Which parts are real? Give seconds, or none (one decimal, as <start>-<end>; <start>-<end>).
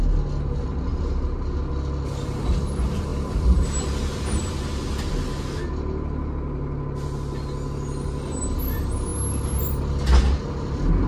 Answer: 0.0-0.9; 1.7-11.1